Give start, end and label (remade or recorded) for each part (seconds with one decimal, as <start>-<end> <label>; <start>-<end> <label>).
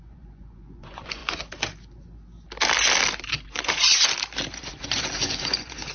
0.0-1.2 remade; 1.2-3.3 recorded; 3.3-3.9 remade; 3.9-4.6 recorded; 4.6-5.9 remade